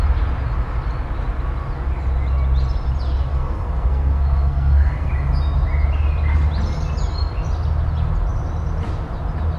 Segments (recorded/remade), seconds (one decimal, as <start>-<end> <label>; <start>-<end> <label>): 0.0-3.3 recorded; 3.3-5.1 remade; 5.1-9.6 recorded

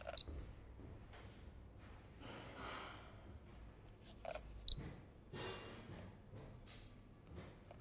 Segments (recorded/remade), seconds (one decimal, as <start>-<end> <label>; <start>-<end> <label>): 0.0-7.8 recorded

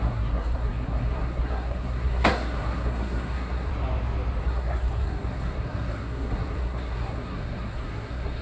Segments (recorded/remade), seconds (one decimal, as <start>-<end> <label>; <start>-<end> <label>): 0.0-3.7 remade; 3.7-4.4 recorded; 4.4-8.4 remade

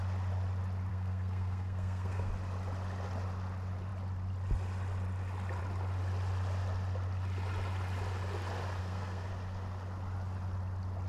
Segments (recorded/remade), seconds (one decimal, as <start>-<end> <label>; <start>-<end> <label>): 0.0-0.9 recorded; 0.9-2.3 remade; 2.3-8.8 recorded; 8.8-9.3 remade; 9.3-11.1 recorded

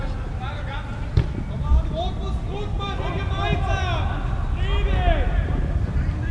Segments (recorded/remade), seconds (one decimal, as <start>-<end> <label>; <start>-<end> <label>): 0.0-6.3 recorded

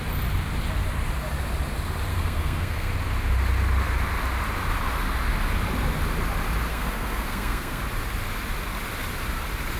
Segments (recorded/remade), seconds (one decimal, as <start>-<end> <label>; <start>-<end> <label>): 0.0-2.1 recorded; 2.1-2.9 remade; 2.9-6.7 recorded; 6.7-7.8 remade; 7.8-9.8 recorded

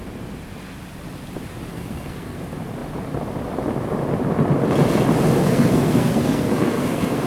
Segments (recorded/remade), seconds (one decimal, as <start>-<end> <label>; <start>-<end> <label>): 0.0-1.7 recorded; 1.7-2.4 remade; 2.4-5.4 recorded; 5.4-7.3 remade

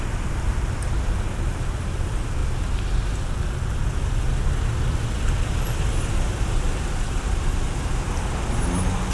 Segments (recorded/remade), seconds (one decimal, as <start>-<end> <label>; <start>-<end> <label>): 0.0-9.1 recorded